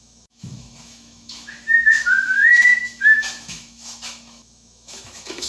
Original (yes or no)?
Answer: no